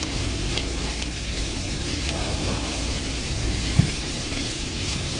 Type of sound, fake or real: fake